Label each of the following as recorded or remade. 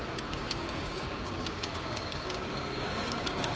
remade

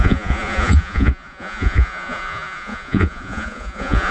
remade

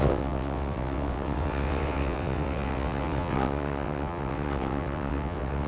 remade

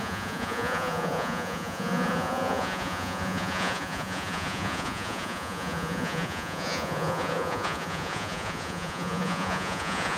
remade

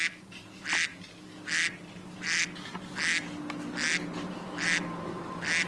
recorded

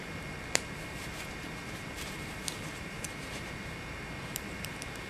remade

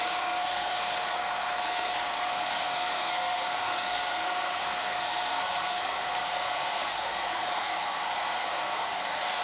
remade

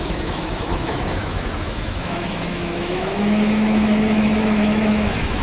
remade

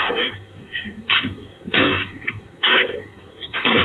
remade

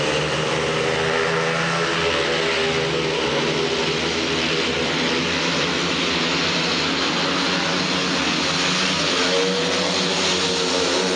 recorded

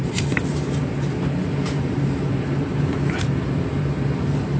remade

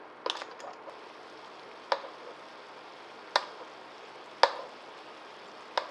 recorded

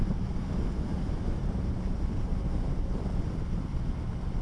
recorded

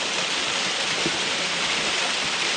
recorded